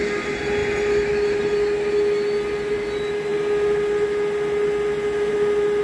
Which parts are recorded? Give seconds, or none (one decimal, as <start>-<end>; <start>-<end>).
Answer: 0.0-5.8